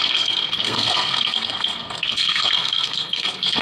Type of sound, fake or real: fake